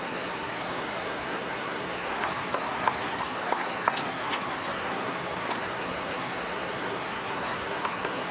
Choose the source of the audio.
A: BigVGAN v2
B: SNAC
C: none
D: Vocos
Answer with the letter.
B